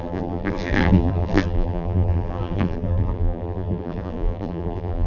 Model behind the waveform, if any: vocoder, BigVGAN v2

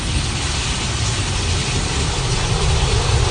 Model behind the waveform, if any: none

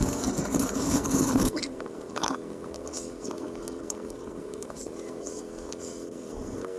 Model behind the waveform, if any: codec, SNAC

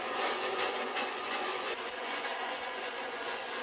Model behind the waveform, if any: vocoder, Vocos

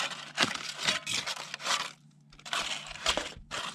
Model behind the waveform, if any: none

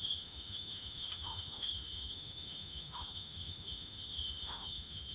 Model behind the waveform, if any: autoencoder, DAC-VAE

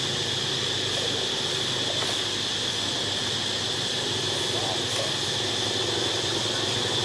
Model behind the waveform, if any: none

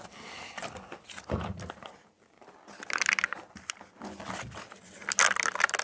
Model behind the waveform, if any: none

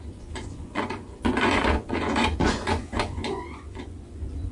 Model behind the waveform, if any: vocoder, Vocos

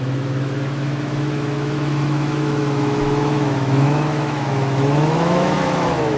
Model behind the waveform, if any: autoencoder, DAC-VAE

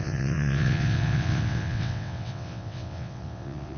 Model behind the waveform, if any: vocoder, WaveNeXt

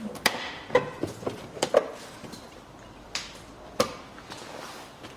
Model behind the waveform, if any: vocoder, BigVGAN v2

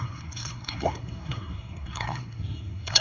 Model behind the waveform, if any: codec, SNAC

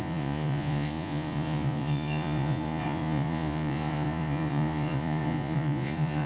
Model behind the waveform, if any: vocoder, Vocos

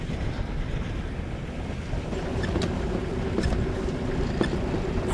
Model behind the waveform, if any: none